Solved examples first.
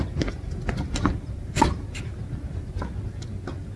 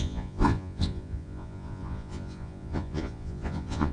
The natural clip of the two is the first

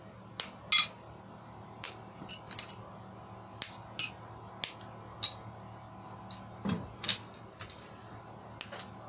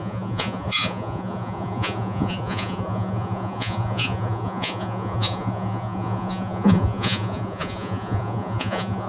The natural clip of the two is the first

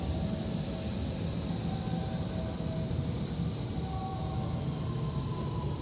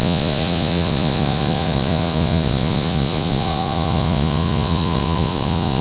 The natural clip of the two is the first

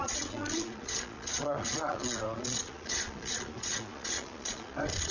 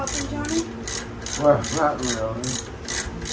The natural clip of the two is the second